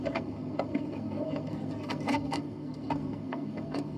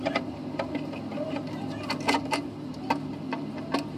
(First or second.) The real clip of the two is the second